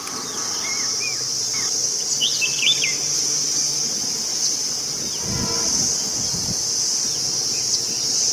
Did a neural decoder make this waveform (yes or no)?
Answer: no